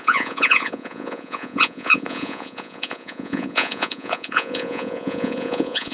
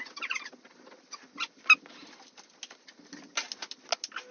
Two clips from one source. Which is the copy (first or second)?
first